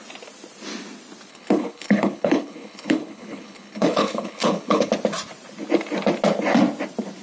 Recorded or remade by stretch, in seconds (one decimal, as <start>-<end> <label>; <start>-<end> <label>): 0.0-1.3 recorded; 1.3-4.9 remade; 4.9-7.2 recorded